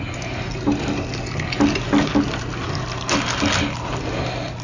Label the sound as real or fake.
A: real